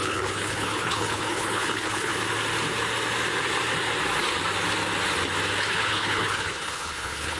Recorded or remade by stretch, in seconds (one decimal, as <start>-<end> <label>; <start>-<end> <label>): 0.0-2.1 remade; 2.1-5.7 recorded; 5.7-7.4 remade